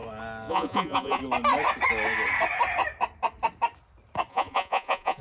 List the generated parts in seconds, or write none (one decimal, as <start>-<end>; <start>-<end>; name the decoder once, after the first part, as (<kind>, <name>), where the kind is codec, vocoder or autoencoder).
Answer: 0.5-1.2 (vocoder, Vocos); 4.3-5.2